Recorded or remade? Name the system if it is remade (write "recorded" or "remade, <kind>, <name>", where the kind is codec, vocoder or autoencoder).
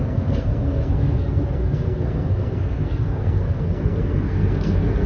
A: remade, codec, SNAC